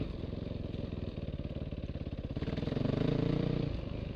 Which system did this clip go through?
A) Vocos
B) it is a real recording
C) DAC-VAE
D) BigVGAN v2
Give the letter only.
B